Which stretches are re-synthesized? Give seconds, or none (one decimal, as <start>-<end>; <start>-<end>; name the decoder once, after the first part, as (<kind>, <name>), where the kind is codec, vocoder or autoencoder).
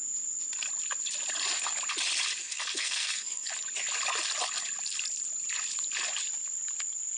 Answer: 2.4-3.5 (codec, SNAC)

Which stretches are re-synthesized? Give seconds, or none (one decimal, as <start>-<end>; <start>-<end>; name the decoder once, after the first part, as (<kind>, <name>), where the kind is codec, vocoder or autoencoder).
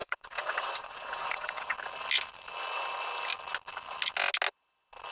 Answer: 0.0-1.8 (vocoder, WaveNeXt)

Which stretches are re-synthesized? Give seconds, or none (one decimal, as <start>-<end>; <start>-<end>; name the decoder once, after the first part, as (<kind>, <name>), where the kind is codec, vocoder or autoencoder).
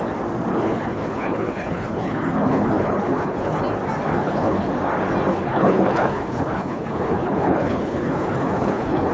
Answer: 0.5-3.6 (codec, HILCodec); 4.1-4.7; 5.3-9.1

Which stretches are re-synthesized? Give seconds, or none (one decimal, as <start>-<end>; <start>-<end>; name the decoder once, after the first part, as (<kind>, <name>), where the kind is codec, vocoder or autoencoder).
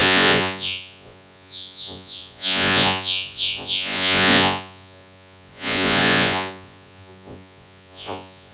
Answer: 0.0-8.5 (vocoder, Vocos)